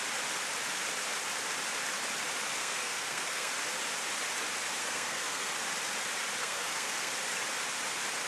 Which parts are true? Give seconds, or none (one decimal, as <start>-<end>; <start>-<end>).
0.0-2.6; 3.5-4.8; 5.5-6.4; 7.1-8.3